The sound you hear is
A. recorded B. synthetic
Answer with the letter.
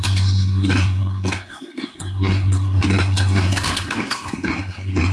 B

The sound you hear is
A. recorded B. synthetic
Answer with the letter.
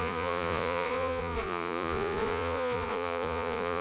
B